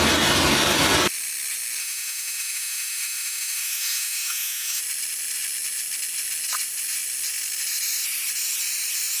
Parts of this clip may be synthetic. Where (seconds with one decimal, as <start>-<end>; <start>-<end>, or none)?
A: 1.8-4.8